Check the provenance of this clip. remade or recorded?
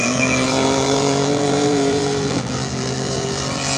remade